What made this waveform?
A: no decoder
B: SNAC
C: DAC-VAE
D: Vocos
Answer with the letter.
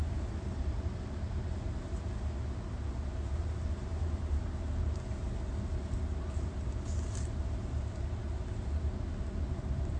A